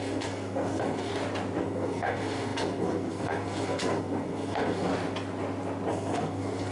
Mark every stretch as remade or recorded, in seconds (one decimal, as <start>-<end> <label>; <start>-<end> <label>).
0.0-1.1 remade; 1.1-1.6 recorded; 1.6-4.9 remade; 4.9-5.9 recorded; 5.9-6.7 remade